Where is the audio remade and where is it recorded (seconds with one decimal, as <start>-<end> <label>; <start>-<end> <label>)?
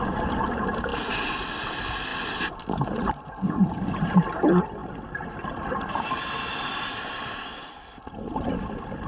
0.0-9.1 recorded